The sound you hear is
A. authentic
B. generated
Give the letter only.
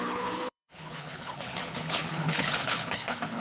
B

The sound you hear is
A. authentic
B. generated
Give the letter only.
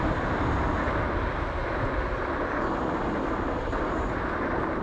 A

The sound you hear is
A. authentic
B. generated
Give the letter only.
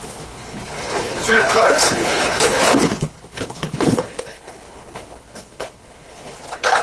B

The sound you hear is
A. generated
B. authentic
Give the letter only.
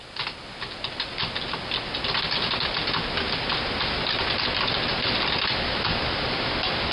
B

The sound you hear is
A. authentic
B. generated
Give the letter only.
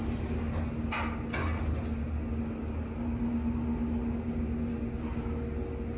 A